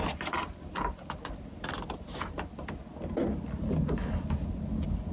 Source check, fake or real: real